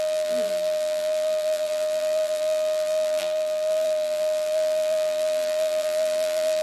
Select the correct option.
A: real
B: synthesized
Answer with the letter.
B